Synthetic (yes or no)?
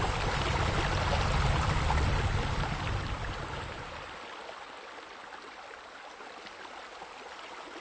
no